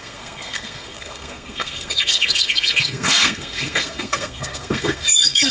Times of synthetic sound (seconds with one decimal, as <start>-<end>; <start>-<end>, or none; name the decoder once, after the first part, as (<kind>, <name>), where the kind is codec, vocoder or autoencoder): 0.0-5.5 (codec, SNAC)